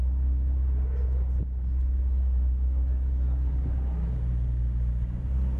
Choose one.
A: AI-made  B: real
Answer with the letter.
B